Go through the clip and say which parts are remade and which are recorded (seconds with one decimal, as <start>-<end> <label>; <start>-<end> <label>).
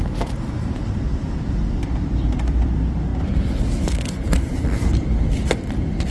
0.0-3.1 remade; 3.1-3.7 recorded; 3.7-6.1 remade